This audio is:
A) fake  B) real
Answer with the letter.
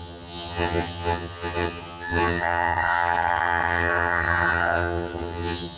A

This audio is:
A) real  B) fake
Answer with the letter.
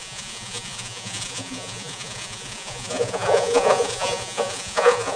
B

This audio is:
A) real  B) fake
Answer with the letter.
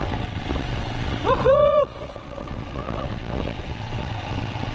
B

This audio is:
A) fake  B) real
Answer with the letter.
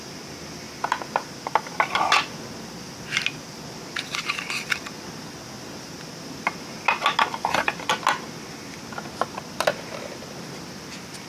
B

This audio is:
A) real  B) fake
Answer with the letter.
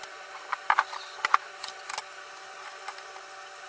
A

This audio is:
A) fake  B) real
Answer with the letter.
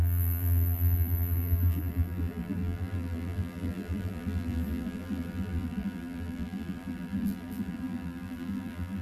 A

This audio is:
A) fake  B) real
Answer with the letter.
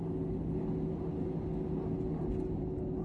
B